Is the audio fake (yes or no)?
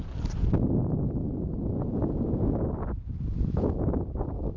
no